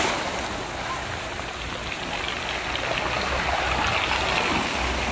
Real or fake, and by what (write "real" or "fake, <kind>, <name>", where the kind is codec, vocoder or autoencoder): real